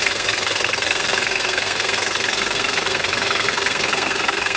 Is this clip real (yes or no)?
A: no